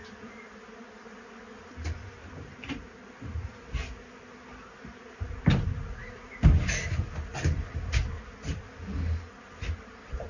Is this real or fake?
real